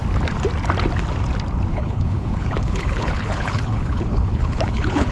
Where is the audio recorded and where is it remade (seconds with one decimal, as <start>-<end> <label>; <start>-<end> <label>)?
0.0-1.7 recorded; 1.7-5.1 remade

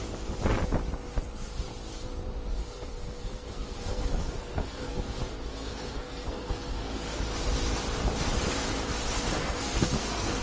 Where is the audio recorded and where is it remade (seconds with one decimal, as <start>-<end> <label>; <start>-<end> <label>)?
0.0-2.6 recorded; 2.6-5.0 remade; 5.0-5.4 recorded; 5.4-7.2 remade; 7.2-9.4 recorded; 9.4-10.4 remade